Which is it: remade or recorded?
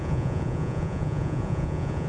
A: remade